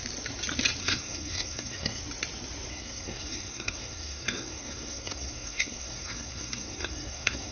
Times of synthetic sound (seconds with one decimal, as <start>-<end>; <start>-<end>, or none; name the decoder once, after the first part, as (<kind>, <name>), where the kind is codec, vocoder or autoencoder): 0.8-2.0 (codec, SNAC); 2.7-7.5